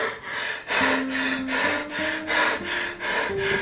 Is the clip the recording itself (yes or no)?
yes